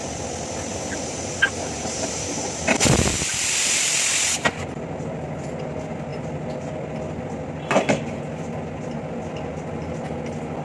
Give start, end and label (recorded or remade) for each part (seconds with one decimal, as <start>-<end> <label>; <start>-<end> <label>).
0.0-0.7 recorded; 0.7-5.6 remade; 5.6-10.6 recorded